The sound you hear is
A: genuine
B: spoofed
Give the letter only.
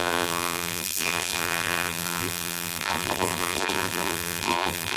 B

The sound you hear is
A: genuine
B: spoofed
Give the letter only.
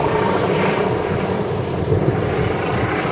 A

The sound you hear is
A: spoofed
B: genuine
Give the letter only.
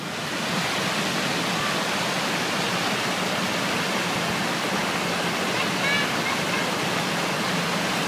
B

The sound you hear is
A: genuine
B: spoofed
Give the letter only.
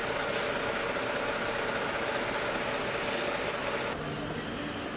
A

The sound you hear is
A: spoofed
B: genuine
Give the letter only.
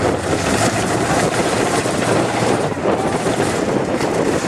A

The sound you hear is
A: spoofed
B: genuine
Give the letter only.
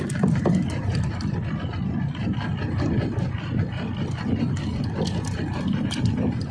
A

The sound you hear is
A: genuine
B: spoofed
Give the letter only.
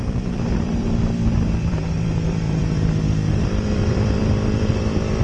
B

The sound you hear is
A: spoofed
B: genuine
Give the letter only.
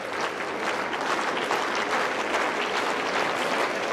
B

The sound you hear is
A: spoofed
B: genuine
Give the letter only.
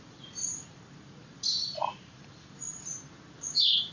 A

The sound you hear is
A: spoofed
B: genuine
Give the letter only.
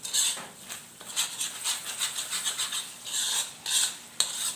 B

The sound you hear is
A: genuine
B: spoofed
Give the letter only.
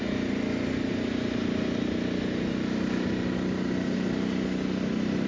A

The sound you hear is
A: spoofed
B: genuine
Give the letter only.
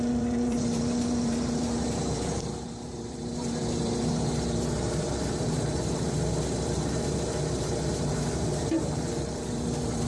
A